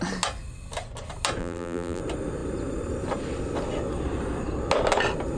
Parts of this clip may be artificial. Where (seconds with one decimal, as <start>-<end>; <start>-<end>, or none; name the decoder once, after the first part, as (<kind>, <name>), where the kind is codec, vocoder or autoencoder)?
1.4-2.0 (vocoder, BigVGAN v2)